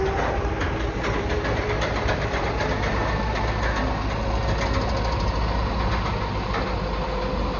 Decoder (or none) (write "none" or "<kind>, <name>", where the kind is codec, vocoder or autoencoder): none